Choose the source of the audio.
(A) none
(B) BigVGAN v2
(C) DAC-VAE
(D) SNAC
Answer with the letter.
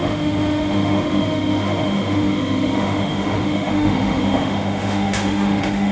C